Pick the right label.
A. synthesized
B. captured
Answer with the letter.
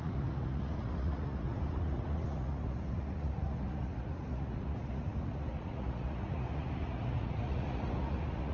A